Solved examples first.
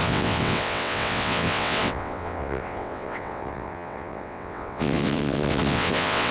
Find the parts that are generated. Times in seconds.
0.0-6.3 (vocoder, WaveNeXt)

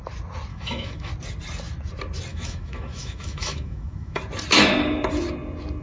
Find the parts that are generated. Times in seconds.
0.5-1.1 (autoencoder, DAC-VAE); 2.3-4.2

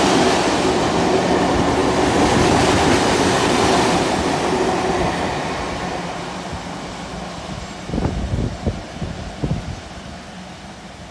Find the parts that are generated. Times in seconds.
none